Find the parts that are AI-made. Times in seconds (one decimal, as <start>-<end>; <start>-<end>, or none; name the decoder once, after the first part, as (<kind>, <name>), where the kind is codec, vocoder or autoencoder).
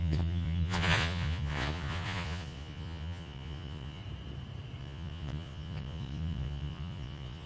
0.0-4.0 (vocoder, Vocos); 4.8-7.5